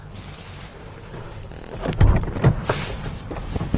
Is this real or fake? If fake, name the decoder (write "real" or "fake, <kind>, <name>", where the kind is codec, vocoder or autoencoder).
fake, vocoder, BigVGAN v2